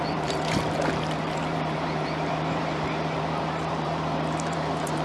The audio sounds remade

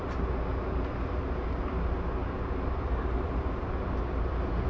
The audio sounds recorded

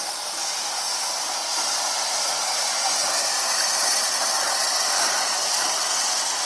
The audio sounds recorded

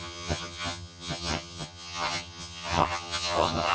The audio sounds remade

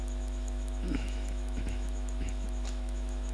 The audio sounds remade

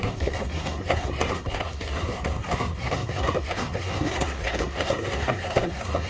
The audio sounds remade